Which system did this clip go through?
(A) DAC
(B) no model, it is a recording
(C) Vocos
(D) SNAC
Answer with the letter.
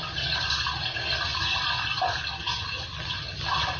B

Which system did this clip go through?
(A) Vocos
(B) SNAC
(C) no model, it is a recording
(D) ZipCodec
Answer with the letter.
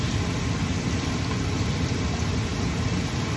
C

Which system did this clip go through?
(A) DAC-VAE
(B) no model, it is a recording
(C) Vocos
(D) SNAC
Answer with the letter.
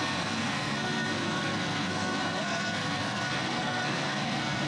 D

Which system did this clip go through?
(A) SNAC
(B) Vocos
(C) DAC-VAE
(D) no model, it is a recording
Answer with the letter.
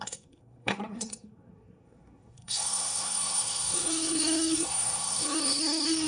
A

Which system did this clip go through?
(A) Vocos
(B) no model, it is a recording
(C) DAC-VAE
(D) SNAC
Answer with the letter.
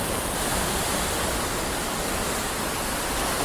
B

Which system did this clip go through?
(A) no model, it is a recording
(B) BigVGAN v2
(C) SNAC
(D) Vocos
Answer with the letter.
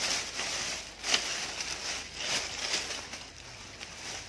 A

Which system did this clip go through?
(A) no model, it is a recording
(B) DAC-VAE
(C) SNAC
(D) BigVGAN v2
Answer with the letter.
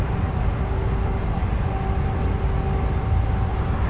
A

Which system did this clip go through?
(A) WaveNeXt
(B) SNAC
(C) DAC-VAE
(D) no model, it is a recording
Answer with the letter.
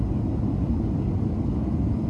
D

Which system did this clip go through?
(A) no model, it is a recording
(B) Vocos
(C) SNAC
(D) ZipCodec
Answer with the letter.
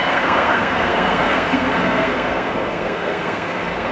C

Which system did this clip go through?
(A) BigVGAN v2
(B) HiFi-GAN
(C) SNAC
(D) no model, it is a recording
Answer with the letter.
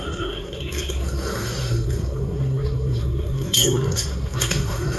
C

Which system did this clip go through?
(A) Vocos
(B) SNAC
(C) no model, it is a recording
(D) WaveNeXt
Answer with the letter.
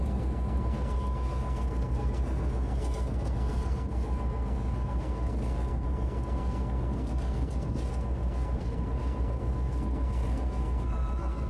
B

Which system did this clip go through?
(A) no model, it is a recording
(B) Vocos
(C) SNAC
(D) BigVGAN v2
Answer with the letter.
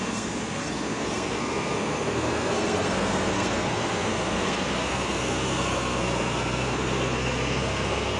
C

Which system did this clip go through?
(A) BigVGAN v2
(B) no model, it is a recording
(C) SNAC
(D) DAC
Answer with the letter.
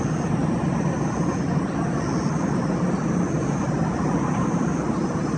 B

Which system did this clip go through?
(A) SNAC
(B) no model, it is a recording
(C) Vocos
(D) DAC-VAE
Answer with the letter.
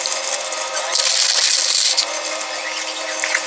B